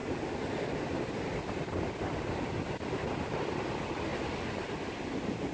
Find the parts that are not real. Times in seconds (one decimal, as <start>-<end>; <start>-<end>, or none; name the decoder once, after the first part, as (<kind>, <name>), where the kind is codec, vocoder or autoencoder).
none